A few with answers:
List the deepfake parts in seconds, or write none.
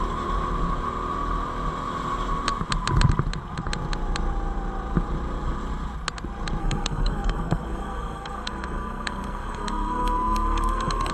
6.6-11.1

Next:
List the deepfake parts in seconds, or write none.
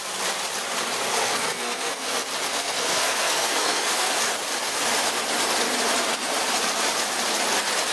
1.1-2.1; 2.5-4.2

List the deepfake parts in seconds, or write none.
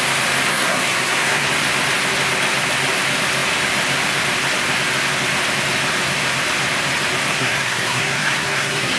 0.5-1.5; 7.3-9.0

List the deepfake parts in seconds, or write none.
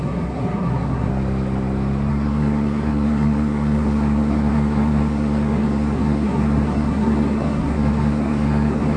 0.0-1.1; 2.1-9.0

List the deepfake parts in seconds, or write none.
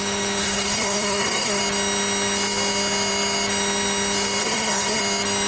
0.4-1.6; 4.4-5.0